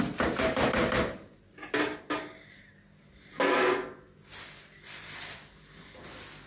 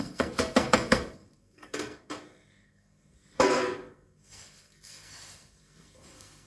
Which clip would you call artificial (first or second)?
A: second